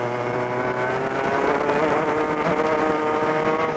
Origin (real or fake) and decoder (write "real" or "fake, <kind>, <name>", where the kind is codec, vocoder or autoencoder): real